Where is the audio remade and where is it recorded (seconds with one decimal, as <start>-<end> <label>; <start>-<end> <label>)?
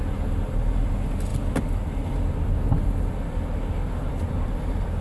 0.0-5.0 recorded